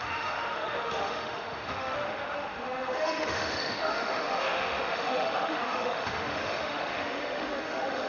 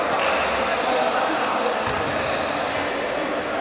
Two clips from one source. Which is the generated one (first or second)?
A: first